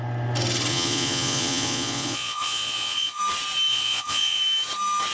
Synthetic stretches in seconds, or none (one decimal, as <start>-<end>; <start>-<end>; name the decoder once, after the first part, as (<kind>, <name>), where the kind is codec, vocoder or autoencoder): 0.7-3.2 (vocoder, Vocos); 3.7-4.4